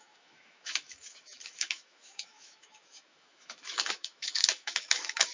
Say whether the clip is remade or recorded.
remade